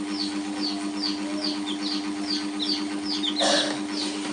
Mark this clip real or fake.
real